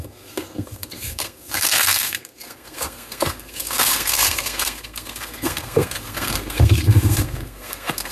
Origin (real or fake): fake